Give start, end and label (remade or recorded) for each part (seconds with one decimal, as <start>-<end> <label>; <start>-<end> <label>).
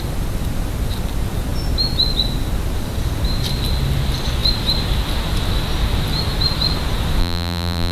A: 0.0-7.2 recorded; 7.2-7.9 remade